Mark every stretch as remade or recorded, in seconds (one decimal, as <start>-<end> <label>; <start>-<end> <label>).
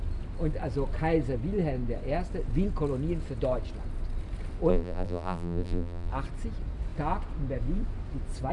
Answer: 0.0-4.7 recorded; 4.7-6.1 remade; 6.1-8.5 recorded